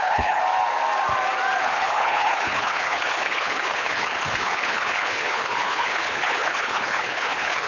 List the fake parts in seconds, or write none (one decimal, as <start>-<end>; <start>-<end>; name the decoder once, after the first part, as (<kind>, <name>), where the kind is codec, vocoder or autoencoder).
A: 0.0-0.4 (codec, HILCodec); 1.6-7.7